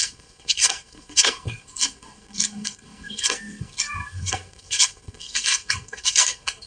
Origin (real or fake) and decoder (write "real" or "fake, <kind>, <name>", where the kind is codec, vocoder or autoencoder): fake, codec, SNAC